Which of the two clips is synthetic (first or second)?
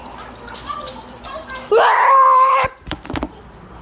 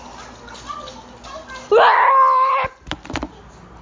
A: first